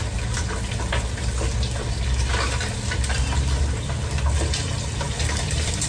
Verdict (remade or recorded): recorded